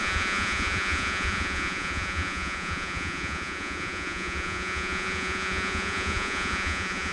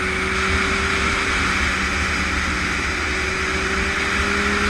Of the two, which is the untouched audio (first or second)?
second